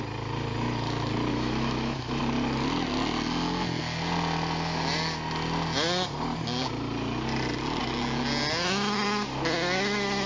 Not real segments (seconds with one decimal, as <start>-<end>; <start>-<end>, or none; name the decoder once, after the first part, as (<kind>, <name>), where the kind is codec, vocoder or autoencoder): 1.3-2.2 (autoencoder, DAC-VAE)